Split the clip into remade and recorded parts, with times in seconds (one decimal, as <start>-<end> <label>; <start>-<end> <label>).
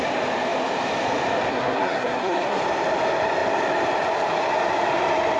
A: 0.0-1.5 recorded; 1.5-2.6 remade; 2.6-5.4 recorded